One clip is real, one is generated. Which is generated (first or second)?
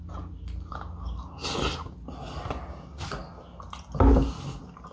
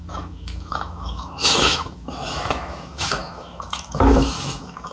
second